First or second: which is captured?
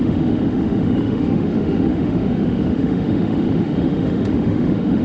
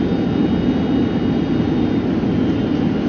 second